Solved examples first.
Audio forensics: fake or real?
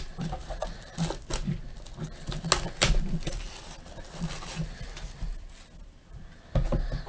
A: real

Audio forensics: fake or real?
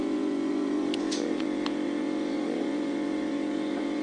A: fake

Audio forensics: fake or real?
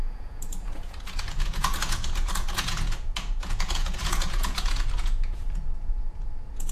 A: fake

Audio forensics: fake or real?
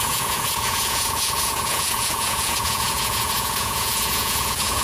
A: fake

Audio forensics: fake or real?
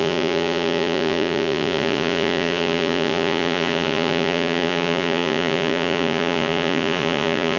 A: fake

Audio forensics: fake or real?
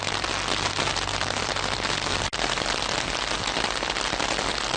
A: real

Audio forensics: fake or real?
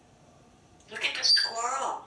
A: real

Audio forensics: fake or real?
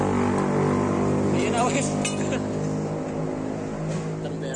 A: real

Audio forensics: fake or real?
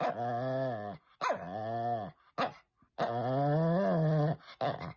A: real